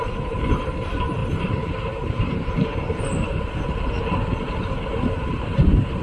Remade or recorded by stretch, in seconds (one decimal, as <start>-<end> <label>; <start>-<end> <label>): 0.0-6.0 remade